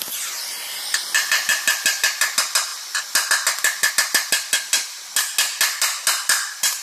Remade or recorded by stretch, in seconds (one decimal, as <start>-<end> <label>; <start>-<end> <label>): 0.0-6.8 recorded